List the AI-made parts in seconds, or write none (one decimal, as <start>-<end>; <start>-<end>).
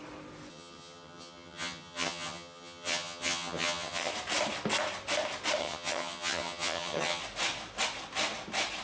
0.5-4.1; 5.6-7.2